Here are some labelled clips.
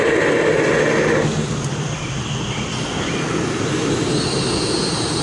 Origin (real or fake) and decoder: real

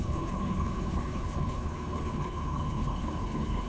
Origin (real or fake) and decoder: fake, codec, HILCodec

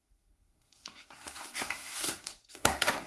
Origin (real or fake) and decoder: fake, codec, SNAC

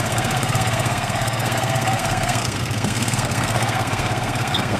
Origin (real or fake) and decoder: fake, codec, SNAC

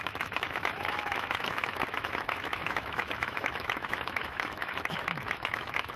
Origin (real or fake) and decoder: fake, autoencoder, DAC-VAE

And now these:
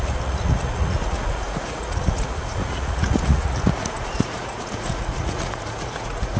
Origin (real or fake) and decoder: fake, vocoder, Vocos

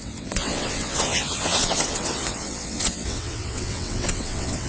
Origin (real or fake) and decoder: fake, vocoder, WaveNeXt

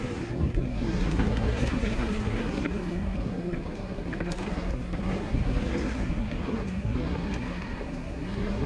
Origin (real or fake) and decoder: fake, codec, SNAC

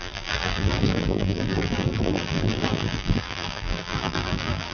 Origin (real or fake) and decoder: fake, vocoder, BigVGAN v2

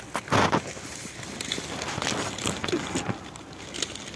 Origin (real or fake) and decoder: real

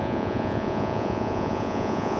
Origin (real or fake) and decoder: fake, vocoder, Vocos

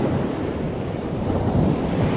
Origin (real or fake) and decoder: fake, vocoder, BigVGAN v2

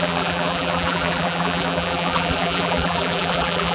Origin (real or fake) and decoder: fake, vocoder, BigVGAN v2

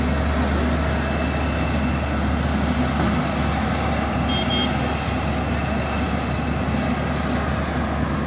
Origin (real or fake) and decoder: real